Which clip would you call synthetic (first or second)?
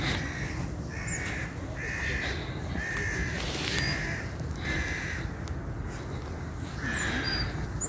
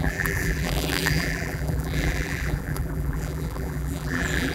second